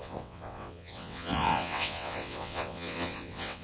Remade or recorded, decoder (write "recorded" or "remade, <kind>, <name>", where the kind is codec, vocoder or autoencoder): remade, vocoder, WaveNeXt